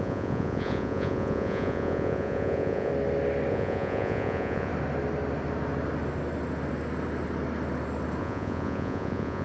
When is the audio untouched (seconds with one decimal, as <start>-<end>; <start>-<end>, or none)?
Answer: 2.9-3.5; 4.7-8.2